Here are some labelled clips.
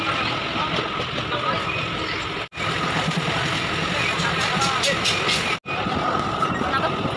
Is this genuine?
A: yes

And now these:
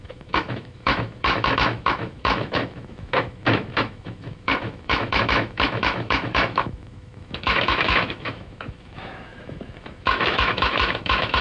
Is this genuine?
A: no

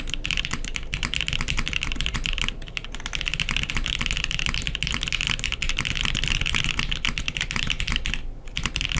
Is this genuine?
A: yes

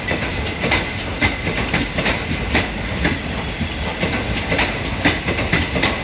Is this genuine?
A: yes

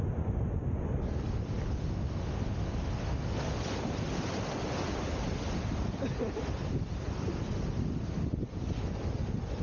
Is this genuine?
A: yes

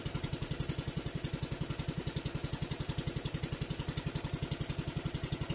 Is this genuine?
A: yes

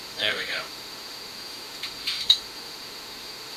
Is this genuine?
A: no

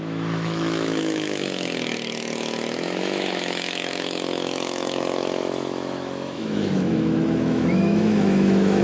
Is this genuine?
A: no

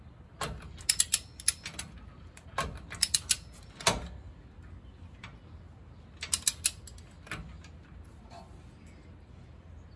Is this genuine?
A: yes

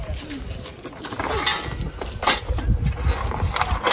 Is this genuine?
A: yes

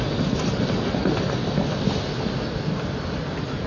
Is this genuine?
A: yes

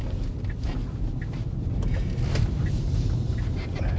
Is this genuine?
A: yes